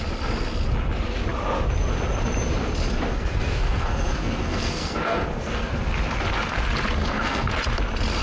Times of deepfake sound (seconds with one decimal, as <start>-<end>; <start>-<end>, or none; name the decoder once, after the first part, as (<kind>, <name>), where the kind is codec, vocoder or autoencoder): 3.1-5.7 (codec, SNAC); 7.0-7.5